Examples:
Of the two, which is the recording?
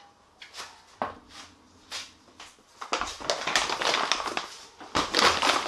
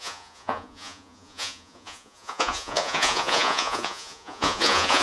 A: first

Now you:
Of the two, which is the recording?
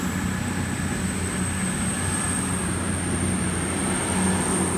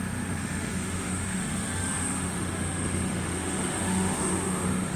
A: first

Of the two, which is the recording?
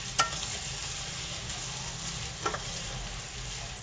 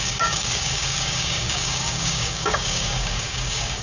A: first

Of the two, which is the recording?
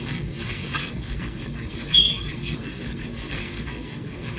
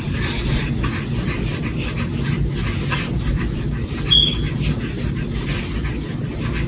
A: second